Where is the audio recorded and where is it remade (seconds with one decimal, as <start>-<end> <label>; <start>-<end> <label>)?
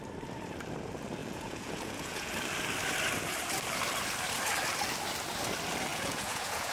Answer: 0.0-1.2 recorded; 1.2-2.3 remade; 2.3-5.9 recorded; 5.9-6.7 remade